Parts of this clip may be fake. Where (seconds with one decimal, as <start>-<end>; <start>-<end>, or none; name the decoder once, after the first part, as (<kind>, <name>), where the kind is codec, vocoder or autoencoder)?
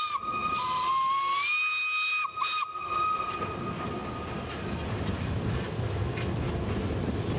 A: none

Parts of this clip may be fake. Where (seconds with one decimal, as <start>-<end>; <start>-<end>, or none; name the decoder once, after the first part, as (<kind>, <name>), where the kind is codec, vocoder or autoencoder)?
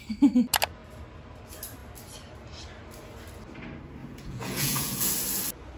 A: 4.0-5.1 (vocoder, Vocos)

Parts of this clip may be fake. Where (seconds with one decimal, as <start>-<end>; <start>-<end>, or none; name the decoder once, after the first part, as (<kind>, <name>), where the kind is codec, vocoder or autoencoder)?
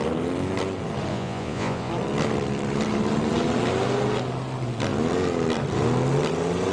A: 1.1-1.9 (vocoder, Vocos)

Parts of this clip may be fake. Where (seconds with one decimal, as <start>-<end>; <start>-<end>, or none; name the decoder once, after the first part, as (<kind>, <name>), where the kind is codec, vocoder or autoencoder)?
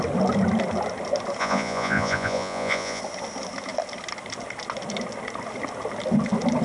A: 1.4-3.0 (vocoder, Vocos)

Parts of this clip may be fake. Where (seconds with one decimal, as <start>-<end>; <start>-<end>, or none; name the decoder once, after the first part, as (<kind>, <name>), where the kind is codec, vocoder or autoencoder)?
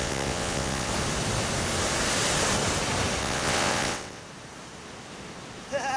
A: 0.0-0.9 (vocoder, WaveNeXt); 3.2-4.2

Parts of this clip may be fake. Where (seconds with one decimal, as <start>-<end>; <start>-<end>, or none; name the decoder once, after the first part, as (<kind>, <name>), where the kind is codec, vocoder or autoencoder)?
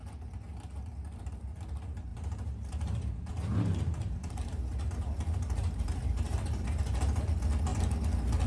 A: 2.1-7.2 (vocoder, BigVGAN v2)